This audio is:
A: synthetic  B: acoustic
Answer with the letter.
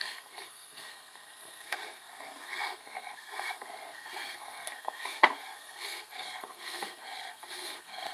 A